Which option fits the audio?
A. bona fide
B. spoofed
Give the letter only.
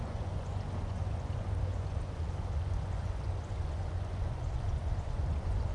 B